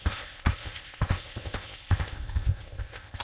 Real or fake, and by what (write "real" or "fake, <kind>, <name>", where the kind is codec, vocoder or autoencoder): fake, codec, ZipCodec